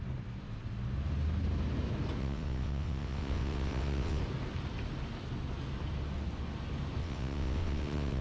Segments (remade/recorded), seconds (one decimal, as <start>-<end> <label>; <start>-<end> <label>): 0.0-2.2 recorded; 2.2-4.2 remade; 4.2-7.0 recorded; 7.0-8.2 remade